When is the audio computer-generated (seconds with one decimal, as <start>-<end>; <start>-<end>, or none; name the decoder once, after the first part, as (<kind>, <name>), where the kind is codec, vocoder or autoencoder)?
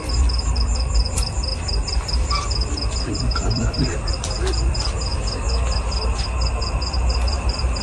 0.0-5.1 (vocoder, BigVGAN v2); 6.6-7.8